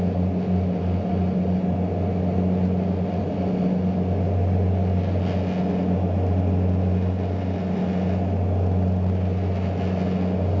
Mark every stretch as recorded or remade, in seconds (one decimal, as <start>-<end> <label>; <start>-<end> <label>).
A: 0.0-10.6 recorded

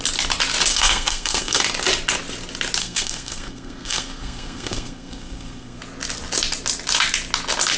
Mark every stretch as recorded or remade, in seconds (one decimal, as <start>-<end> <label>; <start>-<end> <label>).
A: 0.0-0.7 recorded; 0.7-1.6 remade; 1.6-2.8 recorded; 2.8-5.8 remade; 5.8-7.8 recorded

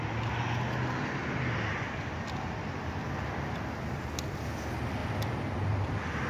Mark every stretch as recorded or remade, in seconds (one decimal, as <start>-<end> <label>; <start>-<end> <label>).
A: 0.0-6.3 recorded